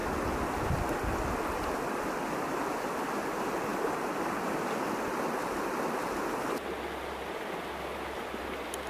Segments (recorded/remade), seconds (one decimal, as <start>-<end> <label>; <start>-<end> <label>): 0.0-8.9 recorded

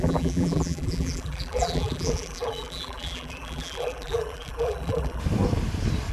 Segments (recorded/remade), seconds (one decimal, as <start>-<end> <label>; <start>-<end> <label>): 0.0-5.2 remade; 5.2-6.1 recorded

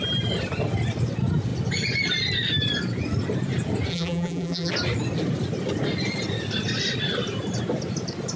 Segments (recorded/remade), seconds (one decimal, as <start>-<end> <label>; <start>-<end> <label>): 0.0-3.9 recorded; 3.9-4.7 remade; 4.7-8.4 recorded